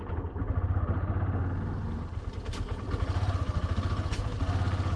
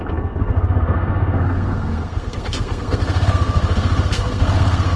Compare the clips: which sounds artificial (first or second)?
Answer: second